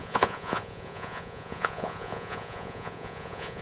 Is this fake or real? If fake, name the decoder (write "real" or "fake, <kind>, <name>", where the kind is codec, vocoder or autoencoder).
fake, vocoder, Vocos